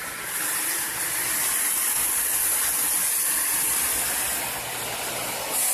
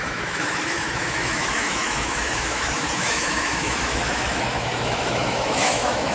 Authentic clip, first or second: first